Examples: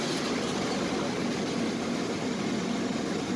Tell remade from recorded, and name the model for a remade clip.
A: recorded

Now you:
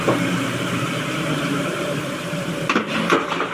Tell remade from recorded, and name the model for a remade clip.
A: remade, vocoder, BigVGAN v2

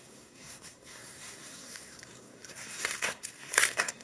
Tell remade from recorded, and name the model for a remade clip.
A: remade, codec, SNAC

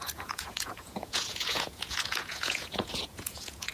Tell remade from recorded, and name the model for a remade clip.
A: remade, vocoder, Vocos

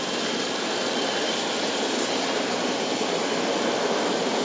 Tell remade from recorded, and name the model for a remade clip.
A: remade, vocoder, BigVGAN v2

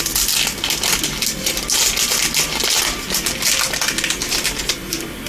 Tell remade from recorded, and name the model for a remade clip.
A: recorded